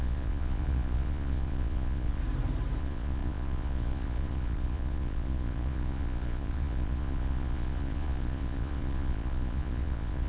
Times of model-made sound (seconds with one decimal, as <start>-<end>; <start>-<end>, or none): 0.0-2.2; 2.8-10.3